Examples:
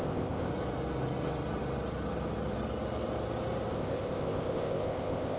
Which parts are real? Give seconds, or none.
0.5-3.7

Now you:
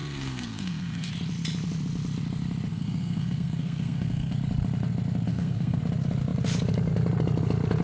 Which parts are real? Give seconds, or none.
1.1-2.7; 4.3-5.3; 5.8-7.8